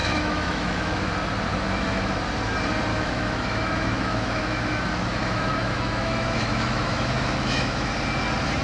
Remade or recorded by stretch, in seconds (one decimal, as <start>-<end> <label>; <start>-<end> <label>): 0.0-1.1 remade; 1.1-1.5 recorded; 1.5-2.2 remade; 2.2-2.9 recorded; 2.9-7.9 remade; 7.9-8.6 recorded